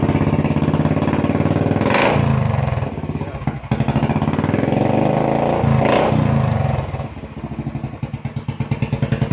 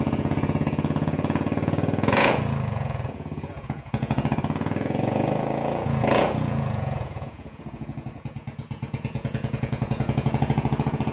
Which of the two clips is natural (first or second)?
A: first